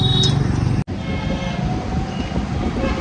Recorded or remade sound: recorded